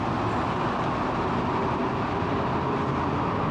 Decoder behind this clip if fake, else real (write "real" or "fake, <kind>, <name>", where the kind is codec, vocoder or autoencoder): real